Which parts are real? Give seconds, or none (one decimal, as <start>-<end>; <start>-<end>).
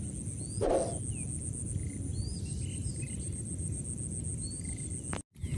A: 0.0-2.1; 3.8-4.3; 4.9-5.6